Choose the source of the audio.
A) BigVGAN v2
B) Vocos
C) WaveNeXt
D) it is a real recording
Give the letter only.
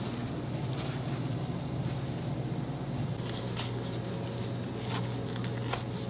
D